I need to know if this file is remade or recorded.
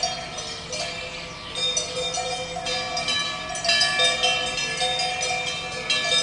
recorded